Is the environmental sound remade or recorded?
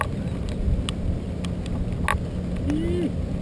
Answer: recorded